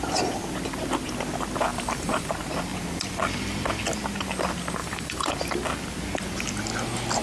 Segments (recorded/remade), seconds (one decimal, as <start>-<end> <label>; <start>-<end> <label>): 0.0-1.7 recorded; 1.7-2.3 remade; 2.3-4.8 recorded; 4.8-5.3 remade; 5.3-7.2 recorded